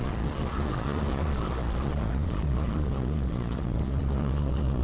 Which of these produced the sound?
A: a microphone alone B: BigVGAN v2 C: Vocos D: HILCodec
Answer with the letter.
C